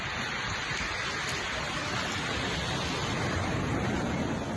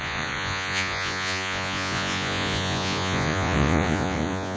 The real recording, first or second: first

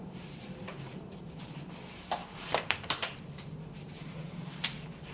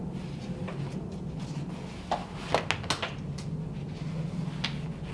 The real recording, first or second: second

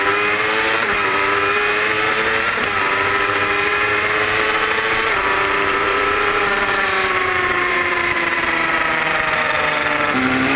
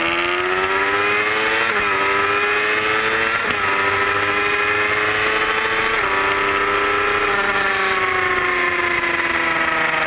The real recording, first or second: second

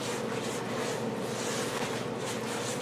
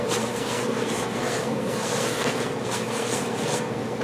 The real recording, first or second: first